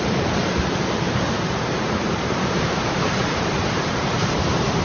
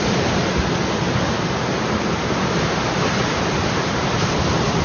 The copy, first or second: first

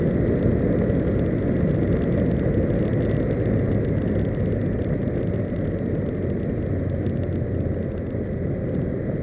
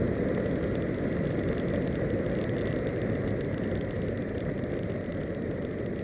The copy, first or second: second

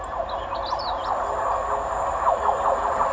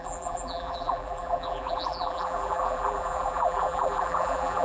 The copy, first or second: second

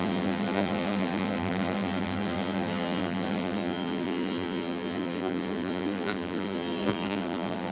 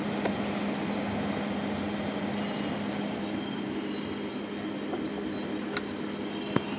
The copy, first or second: first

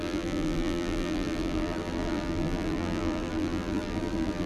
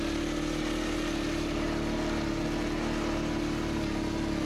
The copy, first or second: first